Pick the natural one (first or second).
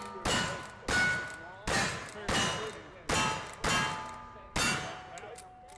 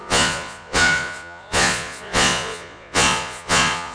first